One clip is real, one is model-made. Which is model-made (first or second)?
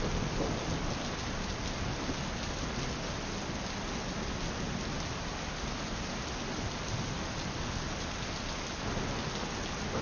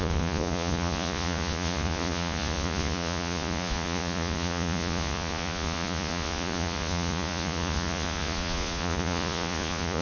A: second